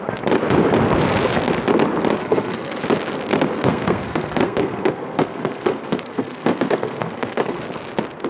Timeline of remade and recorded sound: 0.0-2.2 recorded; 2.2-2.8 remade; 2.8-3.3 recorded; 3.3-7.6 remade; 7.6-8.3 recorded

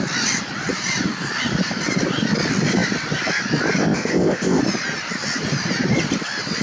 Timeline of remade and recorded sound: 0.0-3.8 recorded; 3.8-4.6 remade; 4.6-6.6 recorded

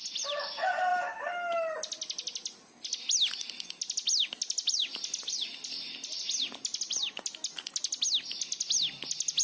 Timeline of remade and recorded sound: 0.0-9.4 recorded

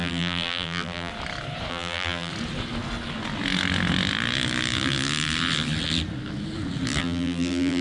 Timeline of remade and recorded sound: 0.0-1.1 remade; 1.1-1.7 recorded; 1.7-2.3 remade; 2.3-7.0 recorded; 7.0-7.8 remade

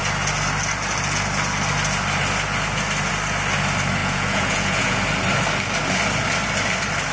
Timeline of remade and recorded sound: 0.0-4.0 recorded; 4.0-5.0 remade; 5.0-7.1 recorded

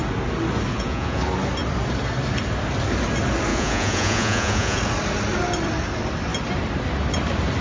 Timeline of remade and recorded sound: 0.0-0.7 recorded; 0.7-1.2 remade; 1.2-3.5 recorded; 3.5-4.8 remade; 4.8-7.6 recorded

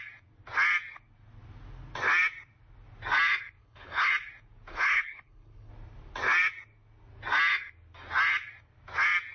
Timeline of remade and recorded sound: 0.0-3.6 recorded; 3.6-4.1 remade; 4.1-4.7 recorded; 4.7-5.7 remade; 5.7-9.3 recorded

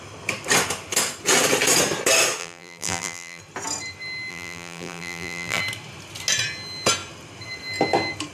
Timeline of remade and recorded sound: 0.0-2.4 recorded; 2.4-3.4 remade; 3.4-4.3 recorded; 4.3-5.6 remade; 5.6-8.3 recorded